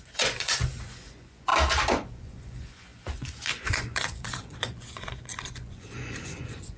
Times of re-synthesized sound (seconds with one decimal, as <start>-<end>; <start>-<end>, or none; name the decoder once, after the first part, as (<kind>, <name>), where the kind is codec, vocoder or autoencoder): 0.0-1.5 (vocoder, Vocos); 2.1-6.8

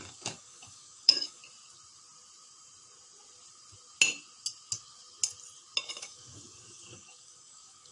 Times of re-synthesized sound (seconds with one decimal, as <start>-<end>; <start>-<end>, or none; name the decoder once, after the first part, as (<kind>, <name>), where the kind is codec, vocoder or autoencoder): 0.0-1.4 (codec, DAC); 5.9-7.9

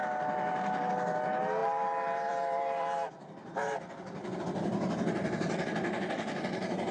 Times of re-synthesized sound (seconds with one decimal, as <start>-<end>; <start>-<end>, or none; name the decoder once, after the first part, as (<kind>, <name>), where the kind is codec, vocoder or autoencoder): 1.6-4.4 (vocoder, BigVGAN v2)

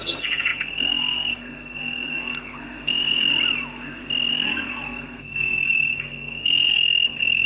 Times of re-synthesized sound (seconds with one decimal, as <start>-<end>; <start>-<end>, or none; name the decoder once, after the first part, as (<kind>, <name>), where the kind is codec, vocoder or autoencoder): 0.0-3.3 (codec, SNAC); 4.3-7.5

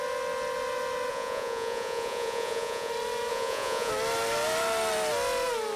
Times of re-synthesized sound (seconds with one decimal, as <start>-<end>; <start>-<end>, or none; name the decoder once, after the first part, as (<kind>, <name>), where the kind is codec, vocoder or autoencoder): 1.1-2.9 (vocoder, Vocos); 3.3-3.9

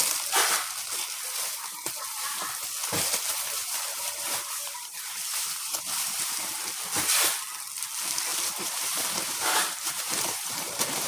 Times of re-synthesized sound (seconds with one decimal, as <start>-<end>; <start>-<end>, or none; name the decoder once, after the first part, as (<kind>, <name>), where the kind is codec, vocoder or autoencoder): 3.6-6.5 (vocoder, BigVGAN v2); 8.3-11.1

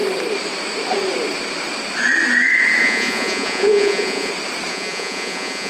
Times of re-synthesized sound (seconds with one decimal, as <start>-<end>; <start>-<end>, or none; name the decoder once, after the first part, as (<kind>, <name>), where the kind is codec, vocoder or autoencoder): 2.8-4.3 (vocoder, Vocos); 4.7-5.7

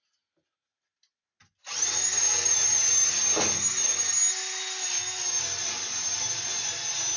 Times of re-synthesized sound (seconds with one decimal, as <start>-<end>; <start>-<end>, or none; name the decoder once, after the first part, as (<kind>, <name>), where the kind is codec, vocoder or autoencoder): none